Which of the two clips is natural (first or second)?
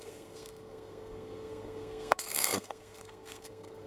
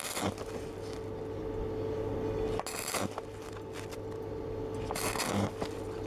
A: second